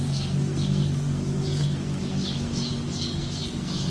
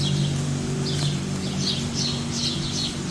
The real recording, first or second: second